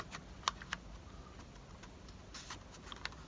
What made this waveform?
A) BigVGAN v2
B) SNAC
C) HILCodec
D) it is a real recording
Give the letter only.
D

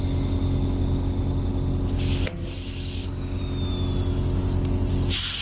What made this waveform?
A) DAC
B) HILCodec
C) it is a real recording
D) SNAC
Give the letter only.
C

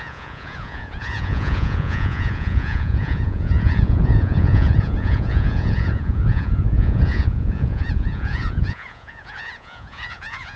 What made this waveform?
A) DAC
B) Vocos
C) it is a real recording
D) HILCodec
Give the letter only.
B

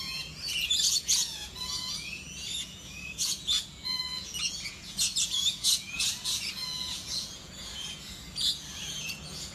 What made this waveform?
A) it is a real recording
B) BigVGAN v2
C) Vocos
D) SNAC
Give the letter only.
C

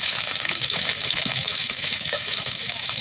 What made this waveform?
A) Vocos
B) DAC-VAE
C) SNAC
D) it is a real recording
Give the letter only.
B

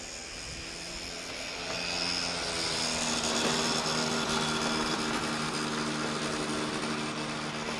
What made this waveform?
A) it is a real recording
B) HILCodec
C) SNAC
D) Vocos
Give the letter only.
A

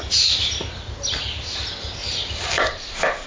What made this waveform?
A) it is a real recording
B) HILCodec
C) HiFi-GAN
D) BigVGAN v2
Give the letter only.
A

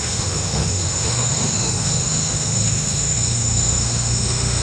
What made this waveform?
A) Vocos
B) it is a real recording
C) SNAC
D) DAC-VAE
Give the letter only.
D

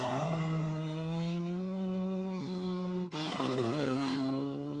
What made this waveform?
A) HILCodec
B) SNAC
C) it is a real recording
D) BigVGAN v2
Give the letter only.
B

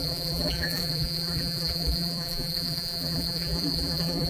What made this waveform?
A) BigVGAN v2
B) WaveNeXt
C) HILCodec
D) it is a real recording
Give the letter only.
A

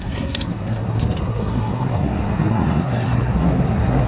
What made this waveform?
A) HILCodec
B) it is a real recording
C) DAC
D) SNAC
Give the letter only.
D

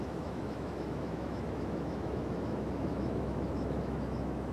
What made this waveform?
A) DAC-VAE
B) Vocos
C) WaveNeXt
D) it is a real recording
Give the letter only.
A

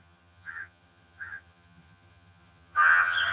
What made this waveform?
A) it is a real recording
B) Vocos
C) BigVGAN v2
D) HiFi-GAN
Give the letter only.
D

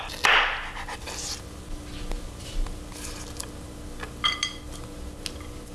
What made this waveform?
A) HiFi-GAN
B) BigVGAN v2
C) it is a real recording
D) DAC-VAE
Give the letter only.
C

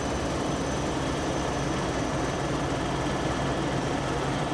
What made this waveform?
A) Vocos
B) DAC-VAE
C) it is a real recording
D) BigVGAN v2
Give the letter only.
D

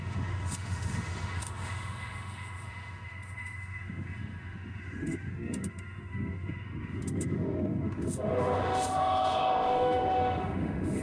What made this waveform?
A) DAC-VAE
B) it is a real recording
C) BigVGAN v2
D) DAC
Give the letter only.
A